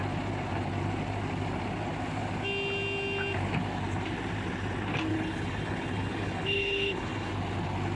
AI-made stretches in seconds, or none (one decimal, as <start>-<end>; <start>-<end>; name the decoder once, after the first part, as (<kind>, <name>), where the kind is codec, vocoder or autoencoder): 5.1-7.3 (codec, HILCodec)